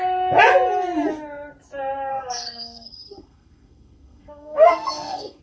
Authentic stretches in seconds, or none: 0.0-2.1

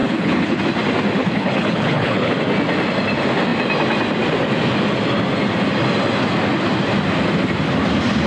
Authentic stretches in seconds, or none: 0.6-1.2; 2.3-8.3